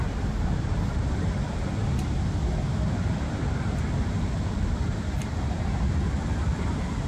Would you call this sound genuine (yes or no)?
no